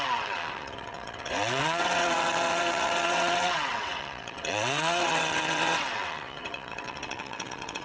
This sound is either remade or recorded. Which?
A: remade